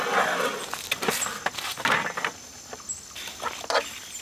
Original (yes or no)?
yes